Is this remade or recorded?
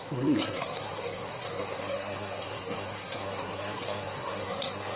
remade